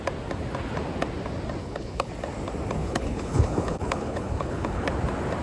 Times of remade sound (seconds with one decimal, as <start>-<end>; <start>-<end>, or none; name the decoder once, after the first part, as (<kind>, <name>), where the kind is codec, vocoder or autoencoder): 1.6-2.1 (codec, HILCodec); 2.8-4.9